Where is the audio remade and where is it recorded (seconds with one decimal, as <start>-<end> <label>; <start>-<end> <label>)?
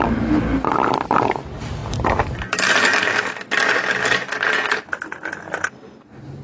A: 0.0-6.4 recorded